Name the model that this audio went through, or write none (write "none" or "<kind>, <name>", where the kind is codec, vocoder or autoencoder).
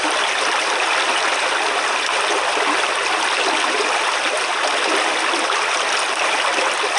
none